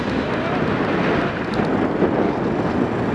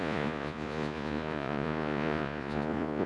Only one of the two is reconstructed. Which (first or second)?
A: second